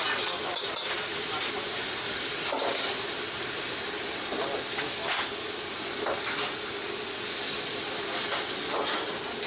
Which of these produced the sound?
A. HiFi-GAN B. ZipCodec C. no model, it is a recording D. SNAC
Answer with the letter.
C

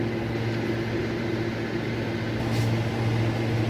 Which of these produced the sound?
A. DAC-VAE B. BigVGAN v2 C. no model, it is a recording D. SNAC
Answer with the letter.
C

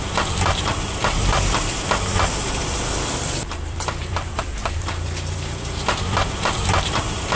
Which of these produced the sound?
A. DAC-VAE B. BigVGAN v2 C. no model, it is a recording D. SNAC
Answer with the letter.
B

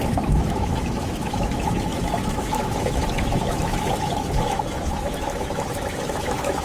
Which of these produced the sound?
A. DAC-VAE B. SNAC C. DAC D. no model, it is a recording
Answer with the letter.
A